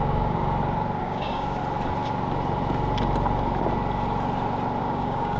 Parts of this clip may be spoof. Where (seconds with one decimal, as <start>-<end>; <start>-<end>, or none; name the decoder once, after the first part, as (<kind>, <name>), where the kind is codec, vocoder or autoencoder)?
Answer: 0.0-0.4 (codec, DAC); 1.0-1.6; 4.8-5.4

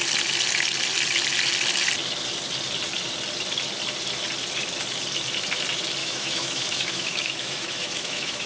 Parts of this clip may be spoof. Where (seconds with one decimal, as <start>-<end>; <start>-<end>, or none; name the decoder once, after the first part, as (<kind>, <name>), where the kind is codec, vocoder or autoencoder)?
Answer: 6.0-8.5 (autoencoder, DAC-VAE)

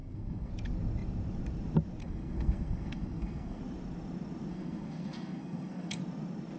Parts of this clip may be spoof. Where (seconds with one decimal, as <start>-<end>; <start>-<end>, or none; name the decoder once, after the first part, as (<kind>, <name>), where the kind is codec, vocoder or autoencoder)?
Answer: 0.0-0.5 (codec, SNAC); 2.0-3.6; 4.5-6.0

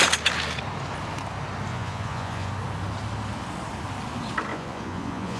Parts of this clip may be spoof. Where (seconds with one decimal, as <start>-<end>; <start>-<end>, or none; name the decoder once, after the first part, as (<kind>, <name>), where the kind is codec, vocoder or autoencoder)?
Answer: 1.7-2.5 (vocoder, Vocos); 4.5-5.4

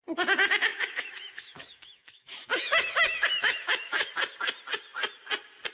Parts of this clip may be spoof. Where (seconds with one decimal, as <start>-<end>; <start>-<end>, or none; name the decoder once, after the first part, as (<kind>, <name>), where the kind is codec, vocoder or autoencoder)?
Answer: 0.7-4.1 (autoencoder, DAC-VAE)